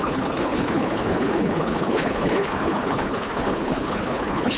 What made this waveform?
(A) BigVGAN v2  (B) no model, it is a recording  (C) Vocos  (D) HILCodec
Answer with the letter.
D